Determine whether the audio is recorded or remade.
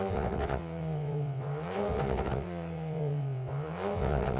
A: remade